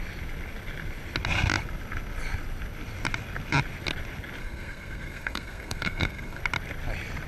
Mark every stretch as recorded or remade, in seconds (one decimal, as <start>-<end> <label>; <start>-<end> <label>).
0.0-4.4 recorded; 4.4-6.4 remade; 6.4-7.3 recorded